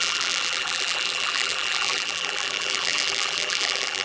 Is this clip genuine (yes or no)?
no